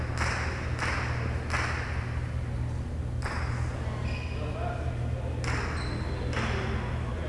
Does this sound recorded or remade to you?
recorded